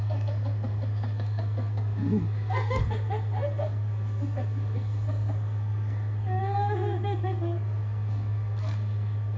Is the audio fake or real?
fake